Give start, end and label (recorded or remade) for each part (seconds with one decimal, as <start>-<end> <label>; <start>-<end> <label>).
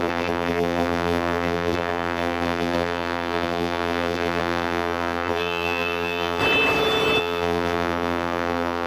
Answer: 0.0-6.4 remade; 6.4-7.2 recorded; 7.2-8.9 remade